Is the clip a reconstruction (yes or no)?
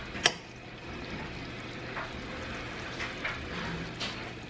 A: no